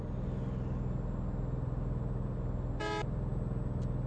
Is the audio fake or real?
real